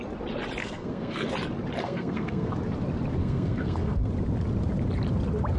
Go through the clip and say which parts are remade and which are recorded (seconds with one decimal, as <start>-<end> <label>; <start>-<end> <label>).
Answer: 0.0-0.6 recorded; 0.6-1.3 remade; 1.3-1.8 recorded; 1.8-2.5 remade; 2.5-3.2 recorded; 3.2-4.1 remade; 4.1-5.6 recorded